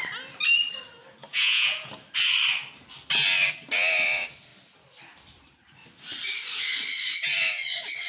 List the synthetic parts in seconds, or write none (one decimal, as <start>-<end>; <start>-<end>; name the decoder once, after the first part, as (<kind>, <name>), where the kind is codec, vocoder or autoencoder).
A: 1.3-1.9 (vocoder, Vocos)

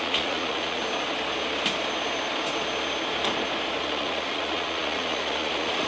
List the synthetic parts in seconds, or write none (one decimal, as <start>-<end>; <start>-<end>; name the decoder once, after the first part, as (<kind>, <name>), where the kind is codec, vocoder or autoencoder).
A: 0.0-0.8 (vocoder, Vocos); 3.8-5.9